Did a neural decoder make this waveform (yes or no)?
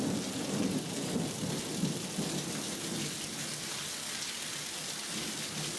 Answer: no